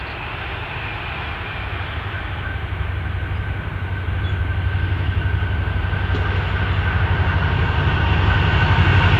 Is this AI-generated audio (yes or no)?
no